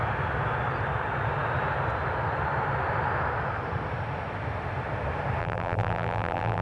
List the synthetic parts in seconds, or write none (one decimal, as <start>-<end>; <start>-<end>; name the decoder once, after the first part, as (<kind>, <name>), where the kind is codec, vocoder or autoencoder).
5.4-6.6 (vocoder, BigVGAN v2)